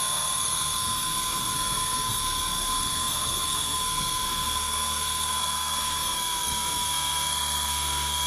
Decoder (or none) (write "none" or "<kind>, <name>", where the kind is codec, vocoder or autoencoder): codec, SNAC